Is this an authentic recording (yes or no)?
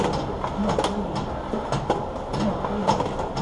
yes